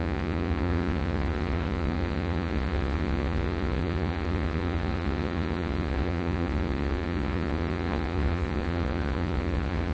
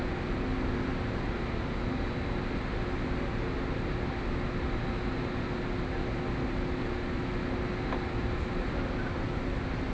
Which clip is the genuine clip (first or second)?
second